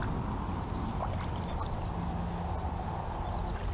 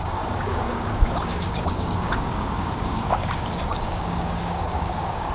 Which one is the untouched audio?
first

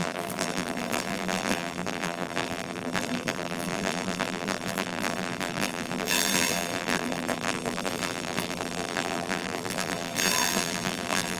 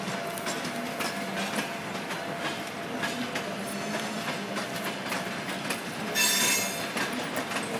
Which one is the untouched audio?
second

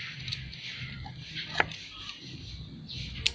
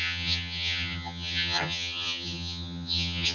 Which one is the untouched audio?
first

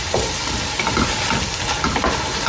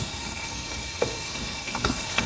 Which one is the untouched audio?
first